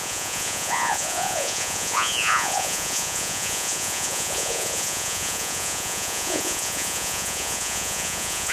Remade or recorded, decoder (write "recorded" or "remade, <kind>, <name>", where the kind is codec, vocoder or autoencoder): remade, vocoder, Vocos